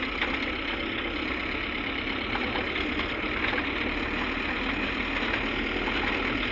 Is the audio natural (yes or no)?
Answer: yes